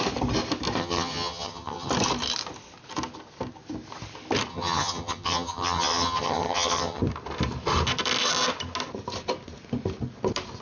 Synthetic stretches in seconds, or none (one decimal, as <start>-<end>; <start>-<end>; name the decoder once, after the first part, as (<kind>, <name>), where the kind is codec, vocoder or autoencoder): 0.8-1.9 (vocoder, HiFi-GAN); 4.5-7.0